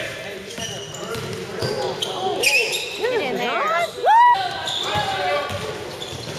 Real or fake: real